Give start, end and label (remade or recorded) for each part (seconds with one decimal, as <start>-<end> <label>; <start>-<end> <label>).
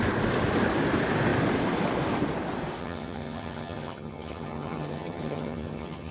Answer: 0.0-2.8 recorded; 2.8-6.1 remade